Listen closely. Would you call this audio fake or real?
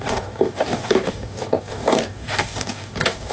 fake